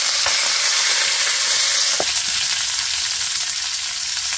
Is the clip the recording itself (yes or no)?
yes